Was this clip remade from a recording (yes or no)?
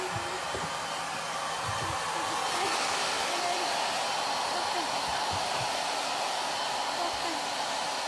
no